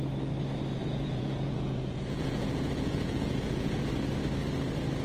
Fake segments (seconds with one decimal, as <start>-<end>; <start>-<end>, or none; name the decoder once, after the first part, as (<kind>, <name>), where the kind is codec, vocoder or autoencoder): 0.8-3.8 (vocoder, Vocos)